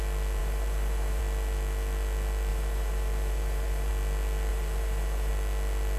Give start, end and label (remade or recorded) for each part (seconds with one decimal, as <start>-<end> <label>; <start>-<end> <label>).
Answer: 0.0-0.4 recorded; 0.4-1.2 remade; 1.2-2.5 recorded; 2.5-3.9 remade; 3.9-4.5 recorded; 4.5-5.3 remade; 5.3-6.0 recorded

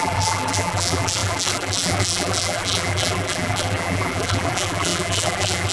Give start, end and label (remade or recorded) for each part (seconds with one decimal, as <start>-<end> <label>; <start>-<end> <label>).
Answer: 0.0-5.7 remade

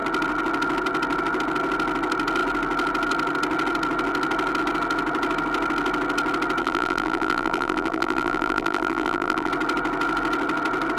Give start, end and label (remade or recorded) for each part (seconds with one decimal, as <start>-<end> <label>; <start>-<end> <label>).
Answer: 0.0-6.6 recorded; 6.6-9.5 remade; 9.5-11.0 recorded

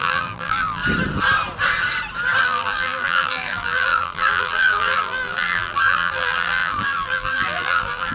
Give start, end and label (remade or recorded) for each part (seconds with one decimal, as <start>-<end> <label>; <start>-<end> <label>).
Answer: 0.0-0.8 remade; 0.8-2.4 recorded; 2.4-8.1 remade